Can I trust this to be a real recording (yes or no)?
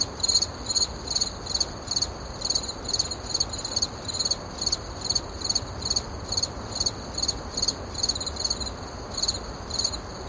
yes